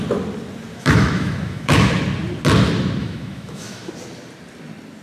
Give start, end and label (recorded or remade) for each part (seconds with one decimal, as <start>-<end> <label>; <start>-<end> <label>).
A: 0.0-0.7 recorded; 0.7-1.9 remade; 1.9-3.0 recorded; 3.0-3.9 remade; 3.9-5.0 recorded